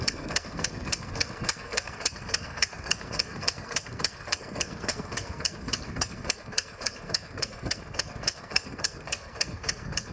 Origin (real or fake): fake